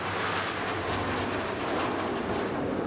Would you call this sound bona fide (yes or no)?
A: yes